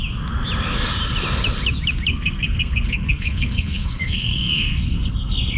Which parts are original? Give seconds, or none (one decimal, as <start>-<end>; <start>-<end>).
0.0-2.1